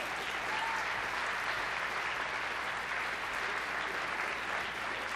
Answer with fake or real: real